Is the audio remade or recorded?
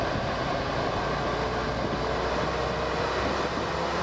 recorded